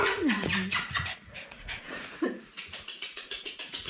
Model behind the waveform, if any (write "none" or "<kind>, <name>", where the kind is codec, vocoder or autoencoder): vocoder, Vocos